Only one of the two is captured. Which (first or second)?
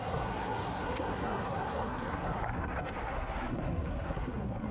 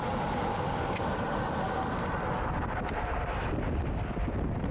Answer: second